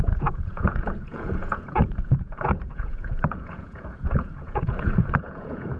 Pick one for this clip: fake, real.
fake